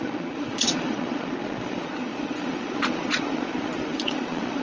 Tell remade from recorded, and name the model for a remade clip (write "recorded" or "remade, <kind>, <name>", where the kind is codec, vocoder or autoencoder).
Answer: remade, vocoder, Vocos